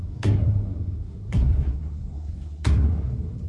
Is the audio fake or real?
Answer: fake